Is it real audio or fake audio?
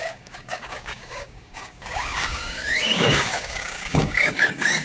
fake